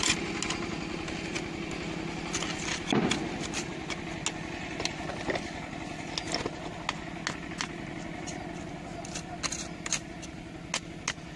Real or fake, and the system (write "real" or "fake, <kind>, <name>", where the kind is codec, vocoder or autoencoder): real